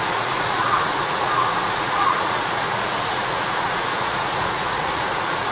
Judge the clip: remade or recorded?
remade